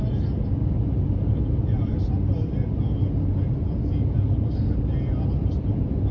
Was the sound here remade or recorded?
recorded